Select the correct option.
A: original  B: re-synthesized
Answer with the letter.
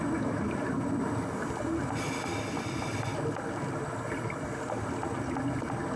A